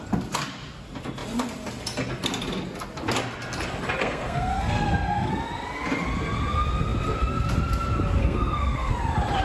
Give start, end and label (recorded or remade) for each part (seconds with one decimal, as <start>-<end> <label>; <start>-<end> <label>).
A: 0.0-4.0 recorded; 4.0-5.3 remade; 5.3-8.2 recorded; 8.2-8.9 remade; 8.9-9.4 recorded